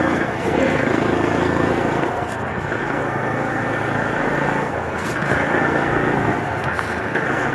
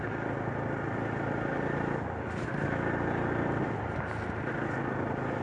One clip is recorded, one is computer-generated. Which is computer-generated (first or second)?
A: first